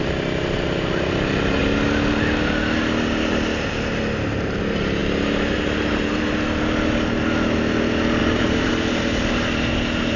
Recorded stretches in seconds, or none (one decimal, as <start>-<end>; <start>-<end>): 0.0-5.0; 6.2-8.2; 8.7-10.2